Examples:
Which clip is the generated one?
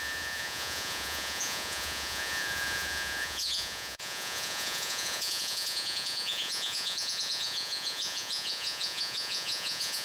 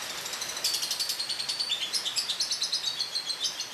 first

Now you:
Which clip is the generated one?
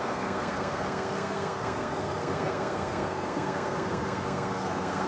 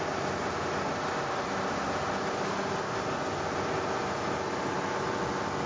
first